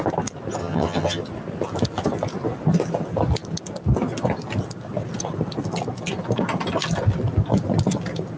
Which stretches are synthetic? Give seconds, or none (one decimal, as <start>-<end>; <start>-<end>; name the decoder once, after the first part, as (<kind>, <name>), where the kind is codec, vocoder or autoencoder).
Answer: 0.6-1.2 (vocoder, HiFi-GAN)